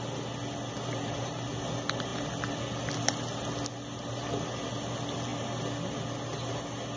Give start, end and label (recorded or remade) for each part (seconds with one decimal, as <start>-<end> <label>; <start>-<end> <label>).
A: 0.0-0.9 recorded; 0.9-1.5 remade; 1.5-7.0 recorded